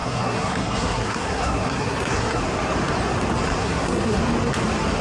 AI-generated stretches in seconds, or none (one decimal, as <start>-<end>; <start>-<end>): 0.0-2.4; 3.6-4.2